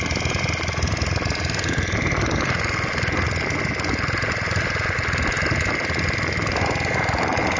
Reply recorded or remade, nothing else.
recorded